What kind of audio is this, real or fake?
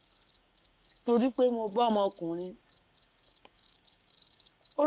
fake